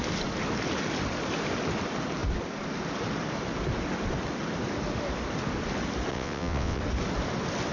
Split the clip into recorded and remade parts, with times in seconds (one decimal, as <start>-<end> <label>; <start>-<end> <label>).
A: 0.0-6.1 recorded; 6.1-6.8 remade; 6.8-7.7 recorded